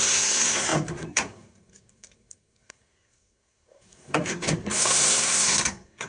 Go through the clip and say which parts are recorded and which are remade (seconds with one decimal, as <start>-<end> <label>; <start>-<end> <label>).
0.0-6.1 remade